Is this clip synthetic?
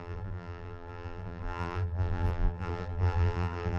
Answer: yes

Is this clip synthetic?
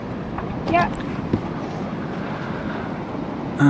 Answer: no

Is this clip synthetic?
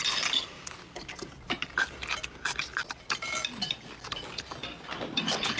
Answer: no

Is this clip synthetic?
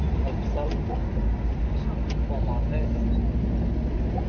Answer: no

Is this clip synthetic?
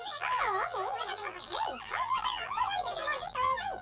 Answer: yes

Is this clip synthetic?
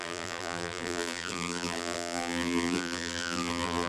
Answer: yes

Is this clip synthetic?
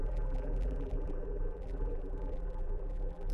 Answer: yes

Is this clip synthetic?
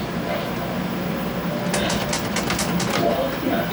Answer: no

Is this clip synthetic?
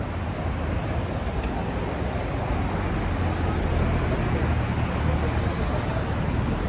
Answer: no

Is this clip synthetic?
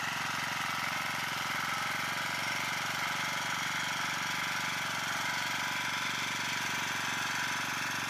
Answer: no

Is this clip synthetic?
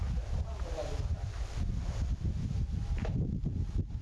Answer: no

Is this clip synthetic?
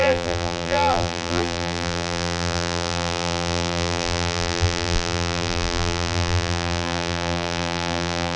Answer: yes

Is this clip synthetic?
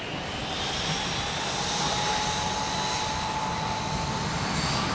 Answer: no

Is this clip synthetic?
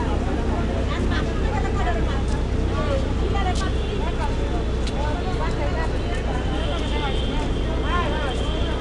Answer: no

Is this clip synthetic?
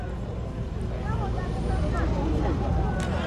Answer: no